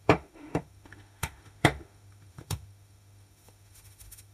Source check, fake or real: fake